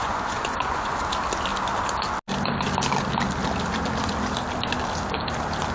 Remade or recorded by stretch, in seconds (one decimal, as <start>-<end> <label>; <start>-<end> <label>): 0.0-1.0 remade; 1.0-5.7 recorded